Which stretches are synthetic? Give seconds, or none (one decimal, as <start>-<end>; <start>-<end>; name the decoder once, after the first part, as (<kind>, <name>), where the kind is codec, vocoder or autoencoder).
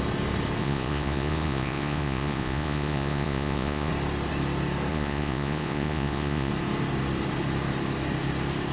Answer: 0.6-3.9 (vocoder, Vocos); 4.9-6.5